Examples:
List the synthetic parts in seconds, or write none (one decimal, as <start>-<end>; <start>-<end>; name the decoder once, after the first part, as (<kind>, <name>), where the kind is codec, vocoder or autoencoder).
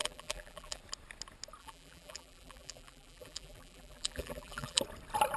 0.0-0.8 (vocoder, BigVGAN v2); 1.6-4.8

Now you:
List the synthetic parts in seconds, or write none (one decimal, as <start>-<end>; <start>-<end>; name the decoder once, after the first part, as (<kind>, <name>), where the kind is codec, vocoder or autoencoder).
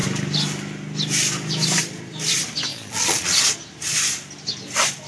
2.7-3.5 (vocoder, Vocos)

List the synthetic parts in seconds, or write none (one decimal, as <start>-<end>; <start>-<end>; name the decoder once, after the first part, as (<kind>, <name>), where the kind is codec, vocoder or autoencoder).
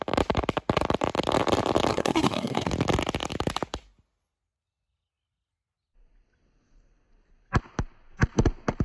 1.9-2.7 (codec, SNAC)